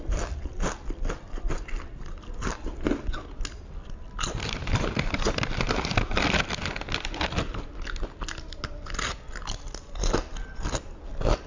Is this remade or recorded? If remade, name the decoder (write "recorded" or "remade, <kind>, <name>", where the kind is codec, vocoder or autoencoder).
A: recorded